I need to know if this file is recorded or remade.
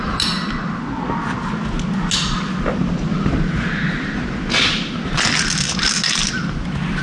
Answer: recorded